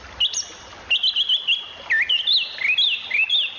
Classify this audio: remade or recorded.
recorded